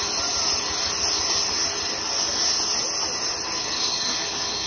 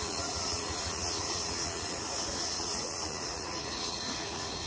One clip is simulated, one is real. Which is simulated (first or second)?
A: second